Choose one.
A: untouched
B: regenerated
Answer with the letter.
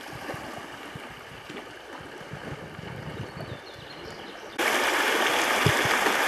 A